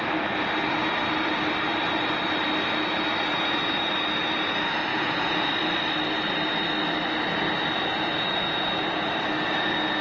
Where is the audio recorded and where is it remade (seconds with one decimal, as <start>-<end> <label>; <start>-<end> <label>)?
0.0-3.3 recorded; 3.3-3.9 remade; 3.9-4.9 recorded; 4.9-5.5 remade; 5.5-7.9 recorded; 7.9-9.1 remade; 9.1-10.0 recorded